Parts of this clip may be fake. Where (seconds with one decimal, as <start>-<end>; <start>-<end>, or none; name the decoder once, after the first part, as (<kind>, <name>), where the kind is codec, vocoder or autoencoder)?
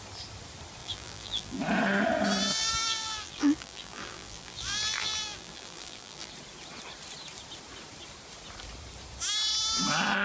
0.8-1.6 (vocoder, BigVGAN v2); 2.5-6.3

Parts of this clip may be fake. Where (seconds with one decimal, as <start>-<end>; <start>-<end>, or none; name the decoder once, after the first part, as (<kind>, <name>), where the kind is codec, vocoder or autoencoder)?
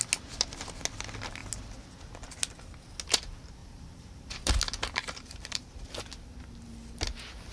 3.6-4.6 (vocoder, BigVGAN v2); 5.0-5.7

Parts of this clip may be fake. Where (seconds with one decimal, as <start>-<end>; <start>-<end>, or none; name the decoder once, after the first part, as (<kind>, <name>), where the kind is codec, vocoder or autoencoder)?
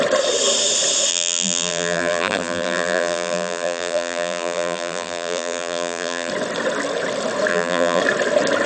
1.1-6.3 (vocoder, BigVGAN v2); 7.5-8.0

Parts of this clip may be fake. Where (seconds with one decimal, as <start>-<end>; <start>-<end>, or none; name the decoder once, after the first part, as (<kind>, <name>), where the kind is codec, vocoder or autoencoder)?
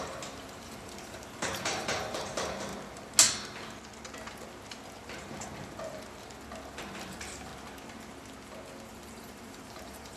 0.0-2.7 (vocoder, BigVGAN v2); 6.8-7.5; 8.9-10.2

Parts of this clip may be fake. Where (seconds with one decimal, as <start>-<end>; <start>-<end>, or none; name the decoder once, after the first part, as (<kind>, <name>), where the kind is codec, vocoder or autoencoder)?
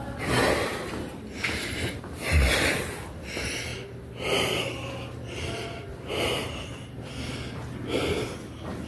none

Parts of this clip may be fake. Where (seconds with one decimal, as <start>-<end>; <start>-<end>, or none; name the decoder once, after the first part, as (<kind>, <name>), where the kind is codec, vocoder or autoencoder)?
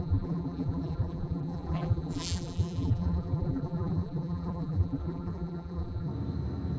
0.0-6.1 (vocoder, BigVGAN v2)